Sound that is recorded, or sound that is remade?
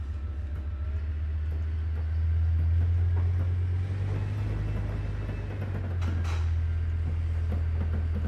recorded